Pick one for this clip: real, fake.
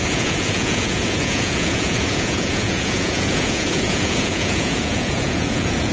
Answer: fake